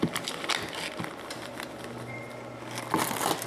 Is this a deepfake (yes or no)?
no